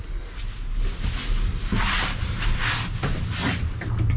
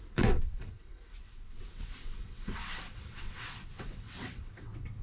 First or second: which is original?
first